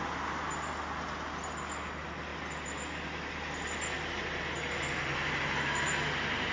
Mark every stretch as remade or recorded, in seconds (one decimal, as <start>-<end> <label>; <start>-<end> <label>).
0.0-6.5 recorded